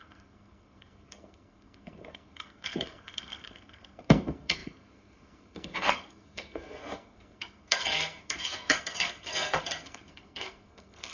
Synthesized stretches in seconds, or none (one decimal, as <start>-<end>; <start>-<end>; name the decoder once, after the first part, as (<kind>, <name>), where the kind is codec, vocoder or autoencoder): 0.0-11.1 (codec, SNAC)